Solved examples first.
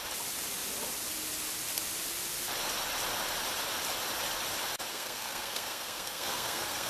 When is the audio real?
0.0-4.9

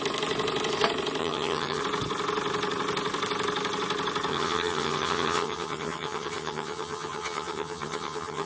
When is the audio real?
0.0-1.2; 1.8-4.3

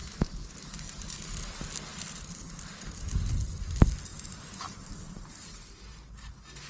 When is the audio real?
0.0-4.1; 5.7-6.7

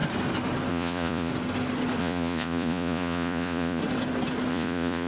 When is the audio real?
0.0-0.7; 1.3-2.0; 3.8-4.5